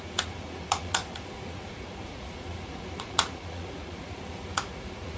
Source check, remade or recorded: remade